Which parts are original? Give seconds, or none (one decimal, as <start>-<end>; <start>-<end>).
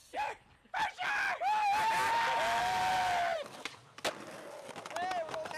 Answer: 0.0-5.6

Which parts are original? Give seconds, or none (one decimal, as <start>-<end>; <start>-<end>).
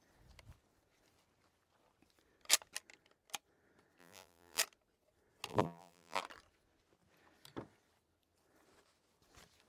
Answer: 0.0-4.0; 4.6-5.5; 6.2-9.7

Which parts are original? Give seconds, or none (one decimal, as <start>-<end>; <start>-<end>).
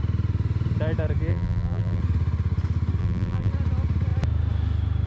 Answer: 0.0-1.3; 2.0-3.0; 3.5-5.1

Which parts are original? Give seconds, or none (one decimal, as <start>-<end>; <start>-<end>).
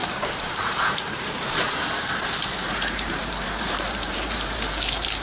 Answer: none